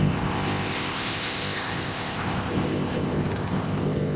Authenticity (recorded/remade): remade